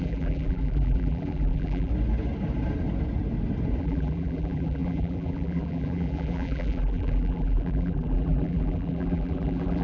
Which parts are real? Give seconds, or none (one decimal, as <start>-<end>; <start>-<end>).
1.9-3.8